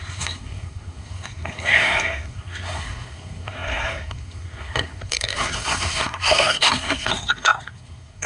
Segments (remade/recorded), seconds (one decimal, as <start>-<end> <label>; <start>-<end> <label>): 0.0-8.3 remade